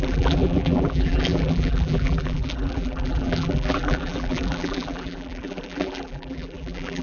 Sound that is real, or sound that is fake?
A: fake